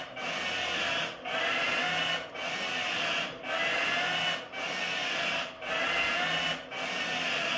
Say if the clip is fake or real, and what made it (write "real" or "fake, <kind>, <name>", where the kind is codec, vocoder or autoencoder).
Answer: real